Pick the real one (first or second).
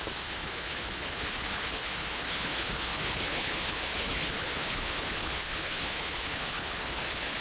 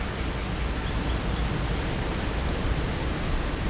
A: second